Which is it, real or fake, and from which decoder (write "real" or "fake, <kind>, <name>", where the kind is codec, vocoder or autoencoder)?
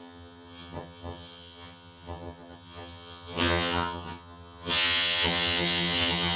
fake, vocoder, HiFi-GAN